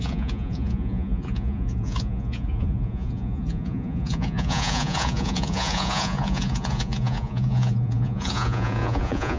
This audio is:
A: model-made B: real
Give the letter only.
A